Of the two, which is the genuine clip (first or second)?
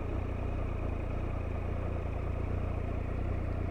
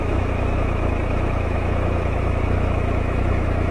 first